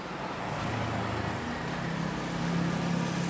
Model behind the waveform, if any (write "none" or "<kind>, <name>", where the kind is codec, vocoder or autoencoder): none